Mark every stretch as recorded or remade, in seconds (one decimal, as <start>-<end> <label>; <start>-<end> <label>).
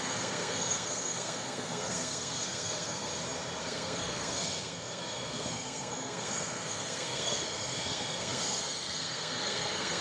0.0-3.1 remade; 3.1-3.6 recorded; 3.6-10.0 remade